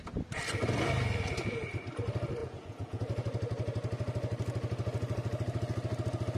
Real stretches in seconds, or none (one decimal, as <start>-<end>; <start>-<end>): 0.0-2.4; 3.0-6.4